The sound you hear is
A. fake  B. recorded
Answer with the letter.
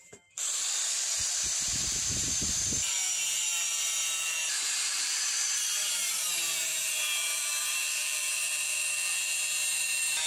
A